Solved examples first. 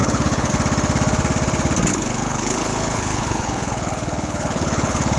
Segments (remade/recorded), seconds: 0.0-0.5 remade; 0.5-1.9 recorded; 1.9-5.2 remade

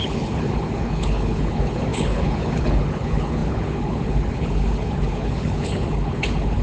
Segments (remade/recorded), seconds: 0.0-6.6 remade

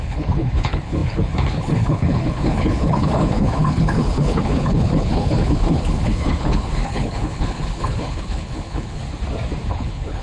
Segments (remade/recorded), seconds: 0.0-9.0 remade; 9.0-9.7 recorded; 9.7-10.2 remade

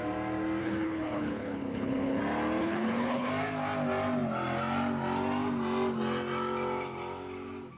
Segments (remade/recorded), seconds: 0.0-0.6 recorded; 0.6-2.2 remade; 2.2-2.6 recorded; 2.6-3.3 remade; 3.3-7.8 recorded